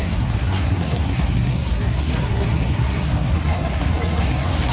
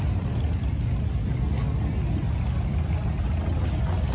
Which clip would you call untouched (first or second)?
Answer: second